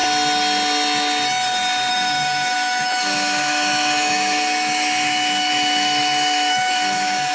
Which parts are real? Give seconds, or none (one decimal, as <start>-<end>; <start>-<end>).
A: 0.0-1.9